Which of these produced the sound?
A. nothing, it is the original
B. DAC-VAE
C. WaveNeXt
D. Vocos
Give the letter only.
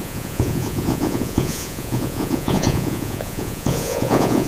D